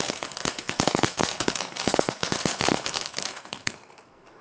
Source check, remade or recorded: remade